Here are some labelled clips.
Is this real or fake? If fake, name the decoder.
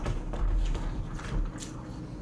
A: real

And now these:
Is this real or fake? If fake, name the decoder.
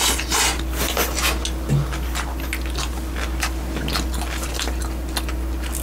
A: real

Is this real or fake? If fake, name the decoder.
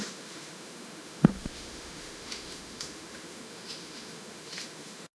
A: fake, autoencoder, DAC-VAE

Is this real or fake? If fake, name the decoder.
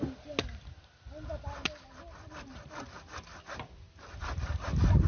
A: real